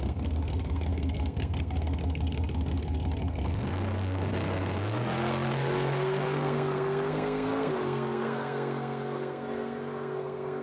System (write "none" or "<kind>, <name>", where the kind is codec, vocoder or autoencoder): codec, SNAC